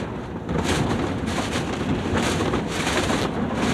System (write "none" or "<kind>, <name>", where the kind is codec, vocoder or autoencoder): none